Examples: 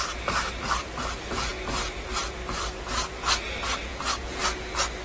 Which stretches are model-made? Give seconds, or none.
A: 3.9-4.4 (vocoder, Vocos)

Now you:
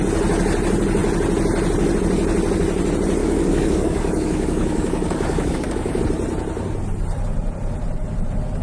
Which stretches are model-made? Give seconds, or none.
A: 3.2-6.0 (codec, DAC)

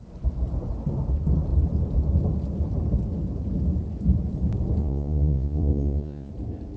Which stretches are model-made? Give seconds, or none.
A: 4.8-6.3 (vocoder, Vocos)

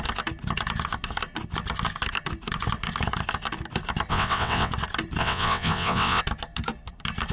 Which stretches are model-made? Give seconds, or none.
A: 4.1-4.7 (vocoder, WaveNeXt); 5.2-6.2